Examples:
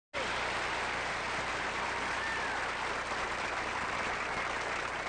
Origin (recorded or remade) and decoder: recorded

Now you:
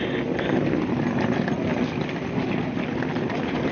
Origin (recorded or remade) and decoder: recorded